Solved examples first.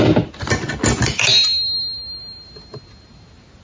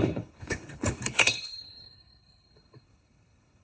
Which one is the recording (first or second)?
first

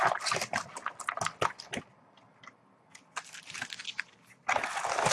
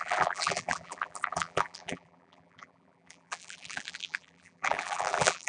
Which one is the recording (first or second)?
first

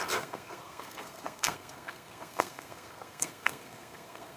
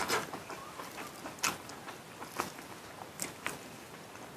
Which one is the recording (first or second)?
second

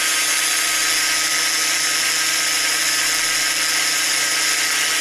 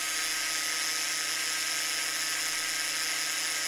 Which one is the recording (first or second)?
second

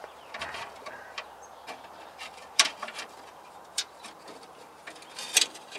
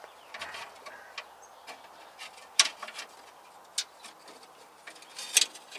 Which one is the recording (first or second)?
second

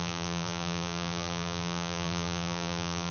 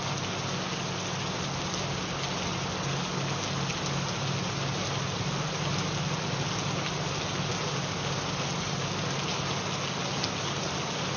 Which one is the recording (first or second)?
second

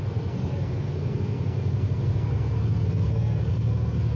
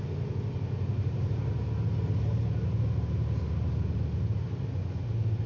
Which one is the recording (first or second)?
second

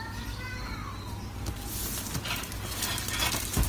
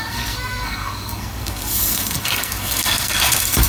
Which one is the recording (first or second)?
first